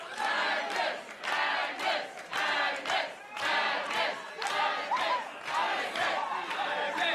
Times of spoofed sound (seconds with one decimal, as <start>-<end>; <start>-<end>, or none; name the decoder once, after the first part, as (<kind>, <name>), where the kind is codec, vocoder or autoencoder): none